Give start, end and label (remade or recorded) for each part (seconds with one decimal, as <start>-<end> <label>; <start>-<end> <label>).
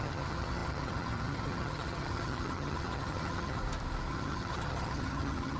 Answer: 0.0-3.6 remade; 3.6-4.1 recorded; 4.1-5.6 remade